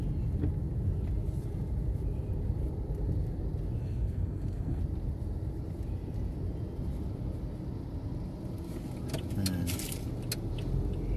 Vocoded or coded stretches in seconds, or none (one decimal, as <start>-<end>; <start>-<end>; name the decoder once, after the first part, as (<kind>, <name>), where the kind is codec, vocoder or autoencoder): 3.8-4.8 (codec, SNAC)